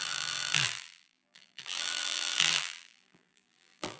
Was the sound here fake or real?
fake